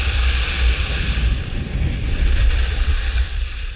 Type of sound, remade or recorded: remade